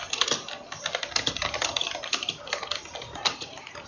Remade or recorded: recorded